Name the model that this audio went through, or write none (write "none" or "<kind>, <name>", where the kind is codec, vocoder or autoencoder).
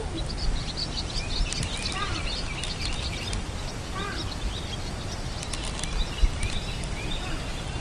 none